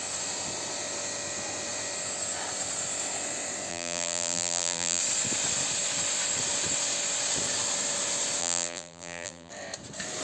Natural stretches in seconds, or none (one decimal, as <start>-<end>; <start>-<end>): 0.0-3.7; 5.0-8.4; 9.5-10.2